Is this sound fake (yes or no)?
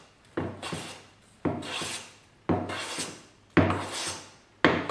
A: no